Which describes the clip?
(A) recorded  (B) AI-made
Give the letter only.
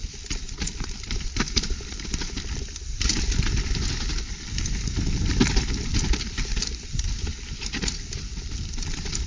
A